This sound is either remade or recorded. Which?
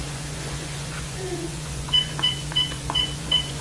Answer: remade